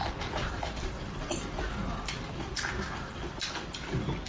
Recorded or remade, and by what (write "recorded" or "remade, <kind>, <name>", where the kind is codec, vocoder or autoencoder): remade, vocoder, BigVGAN v2